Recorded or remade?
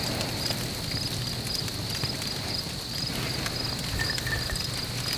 recorded